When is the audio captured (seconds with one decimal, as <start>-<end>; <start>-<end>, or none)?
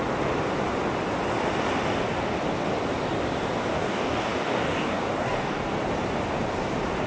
0.0-3.7; 5.6-7.1